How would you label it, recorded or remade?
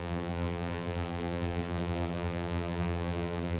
remade